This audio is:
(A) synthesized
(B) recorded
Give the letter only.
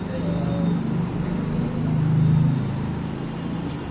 B